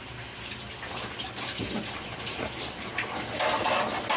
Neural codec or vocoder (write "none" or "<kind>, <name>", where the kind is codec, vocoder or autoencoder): none